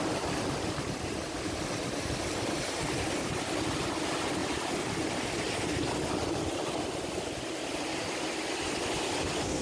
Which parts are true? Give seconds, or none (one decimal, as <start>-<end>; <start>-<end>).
0.0-9.6